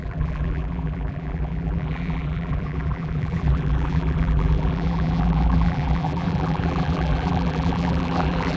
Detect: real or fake fake